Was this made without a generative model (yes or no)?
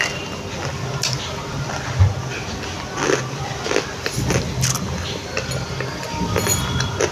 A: yes